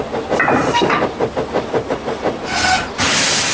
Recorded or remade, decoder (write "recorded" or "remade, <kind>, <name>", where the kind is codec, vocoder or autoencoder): recorded